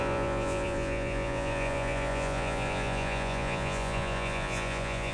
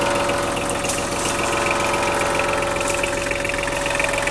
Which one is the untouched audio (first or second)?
second